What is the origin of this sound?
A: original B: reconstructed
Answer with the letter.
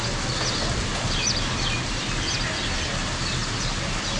A